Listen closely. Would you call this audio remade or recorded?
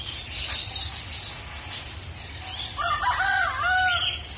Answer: recorded